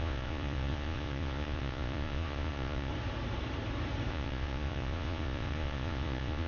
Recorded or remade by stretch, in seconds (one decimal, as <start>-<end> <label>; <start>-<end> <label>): 0.0-2.9 remade; 2.9-4.1 recorded; 4.1-6.5 remade